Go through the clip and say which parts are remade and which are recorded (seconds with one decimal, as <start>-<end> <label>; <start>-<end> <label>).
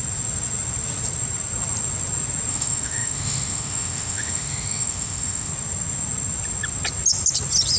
0.0-2.5 recorded; 2.5-5.5 remade; 5.5-7.8 recorded